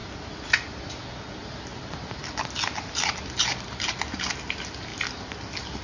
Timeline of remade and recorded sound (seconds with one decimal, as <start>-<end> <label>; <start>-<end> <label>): 0.0-5.8 recorded